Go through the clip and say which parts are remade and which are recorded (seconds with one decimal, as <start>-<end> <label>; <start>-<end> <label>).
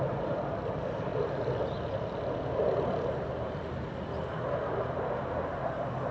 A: 0.0-6.1 recorded